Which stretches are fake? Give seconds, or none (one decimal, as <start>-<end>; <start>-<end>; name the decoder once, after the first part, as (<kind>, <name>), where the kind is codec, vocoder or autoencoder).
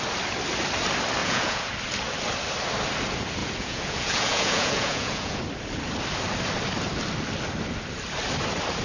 1.2-1.7 (vocoder, Vocos); 3.4-5.4